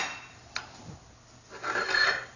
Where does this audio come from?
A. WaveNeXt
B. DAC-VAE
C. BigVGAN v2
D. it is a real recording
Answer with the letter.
D